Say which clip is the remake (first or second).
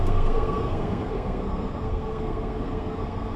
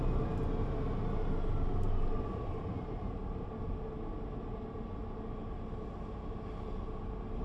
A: first